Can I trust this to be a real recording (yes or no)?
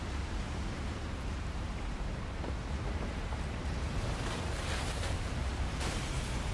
no